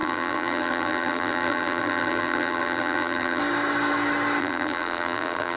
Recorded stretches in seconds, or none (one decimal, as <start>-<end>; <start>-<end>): 3.4-4.4